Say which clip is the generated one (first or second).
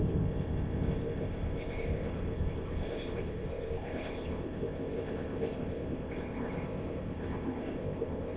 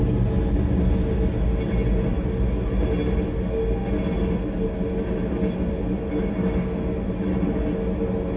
first